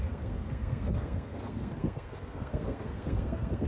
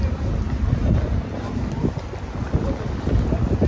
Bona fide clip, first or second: second